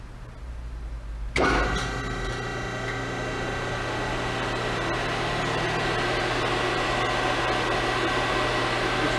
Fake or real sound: real